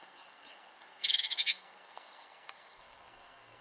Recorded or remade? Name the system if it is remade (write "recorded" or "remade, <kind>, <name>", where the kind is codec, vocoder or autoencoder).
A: remade, codec, SNAC